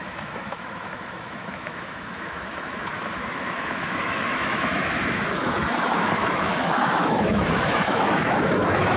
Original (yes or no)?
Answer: no